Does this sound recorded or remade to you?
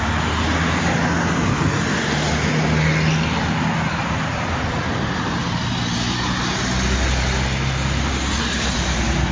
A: recorded